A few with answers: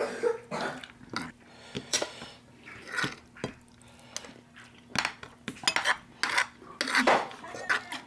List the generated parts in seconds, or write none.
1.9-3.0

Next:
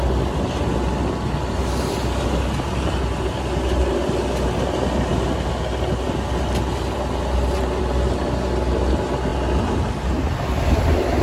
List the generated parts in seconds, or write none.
none

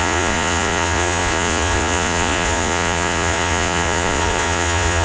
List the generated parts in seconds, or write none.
0.0-5.0

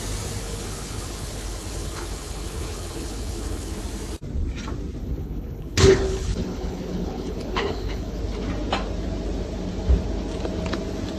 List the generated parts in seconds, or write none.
0.4-3.8; 5.0-8.2

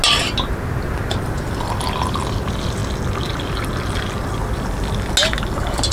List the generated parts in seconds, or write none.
1.6-2.8

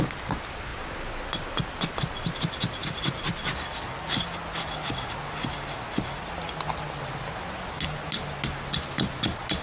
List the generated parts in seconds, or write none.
none

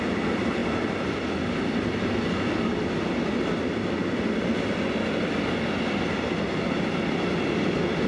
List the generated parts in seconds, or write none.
4.0-4.5